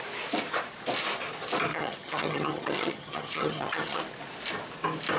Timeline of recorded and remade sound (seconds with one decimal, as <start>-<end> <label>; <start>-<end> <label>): 0.0-1.7 recorded; 1.7-4.0 remade; 4.0-5.2 recorded